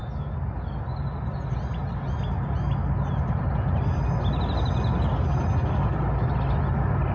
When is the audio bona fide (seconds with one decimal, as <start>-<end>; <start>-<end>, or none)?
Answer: 0.0-7.1